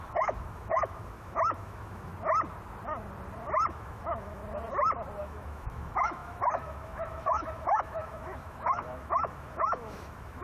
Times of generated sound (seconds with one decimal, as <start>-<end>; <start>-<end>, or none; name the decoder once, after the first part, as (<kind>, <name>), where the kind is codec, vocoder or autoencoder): 0.0-2.1 (autoencoder, DAC-VAE); 3.7-4.4; 5.2-10.4